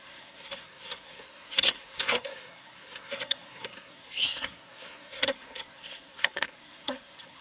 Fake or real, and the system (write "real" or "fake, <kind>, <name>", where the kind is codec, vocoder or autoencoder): fake, codec, SNAC